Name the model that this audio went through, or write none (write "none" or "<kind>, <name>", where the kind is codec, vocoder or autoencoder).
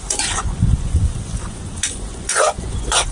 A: vocoder, Vocos